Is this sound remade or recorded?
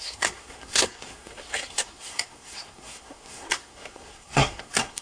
remade